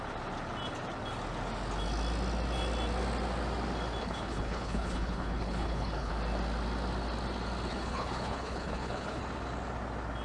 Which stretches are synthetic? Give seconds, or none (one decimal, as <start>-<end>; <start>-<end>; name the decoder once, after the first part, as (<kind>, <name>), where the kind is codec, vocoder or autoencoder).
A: 4.0-6.1 (codec, HILCodec); 7.7-9.2

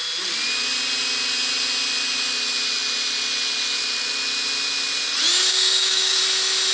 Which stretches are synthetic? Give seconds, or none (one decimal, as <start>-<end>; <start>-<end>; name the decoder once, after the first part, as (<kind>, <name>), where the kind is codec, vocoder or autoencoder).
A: 5.5-6.2 (codec, DAC)

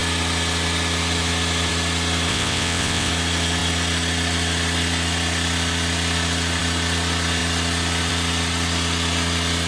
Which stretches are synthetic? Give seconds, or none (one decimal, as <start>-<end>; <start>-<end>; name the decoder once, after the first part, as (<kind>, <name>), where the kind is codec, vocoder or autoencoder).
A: 2.3-3.1 (vocoder, WaveNeXt)

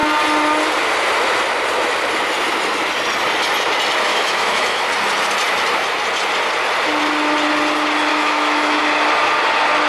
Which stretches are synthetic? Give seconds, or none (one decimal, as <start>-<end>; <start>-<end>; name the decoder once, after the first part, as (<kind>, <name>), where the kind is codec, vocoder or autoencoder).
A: 4.1-4.9 (autoencoder, DAC-VAE); 8.1-8.8

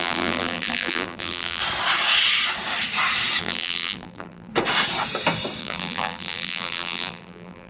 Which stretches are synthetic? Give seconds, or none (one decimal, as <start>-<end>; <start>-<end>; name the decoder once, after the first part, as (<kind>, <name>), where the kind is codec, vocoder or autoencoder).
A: 0.0-1.6 (vocoder, BigVGAN v2); 3.4-4.5; 5.6-7.7

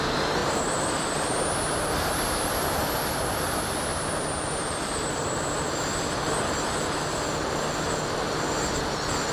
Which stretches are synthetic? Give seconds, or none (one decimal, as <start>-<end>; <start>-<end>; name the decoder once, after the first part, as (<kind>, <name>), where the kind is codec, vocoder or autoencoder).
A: 0.4-1.3 (vocoder, BigVGAN v2); 3.9-7.9

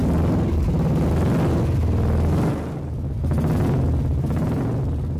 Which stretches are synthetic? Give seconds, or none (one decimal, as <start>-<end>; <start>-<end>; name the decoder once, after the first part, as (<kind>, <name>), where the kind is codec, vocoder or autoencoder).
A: none

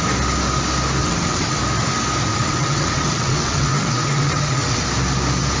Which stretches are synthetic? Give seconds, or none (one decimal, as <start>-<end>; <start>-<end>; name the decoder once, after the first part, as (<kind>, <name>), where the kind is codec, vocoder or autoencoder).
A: 1.0-1.6 (vocoder, WaveNeXt); 2.3-4.8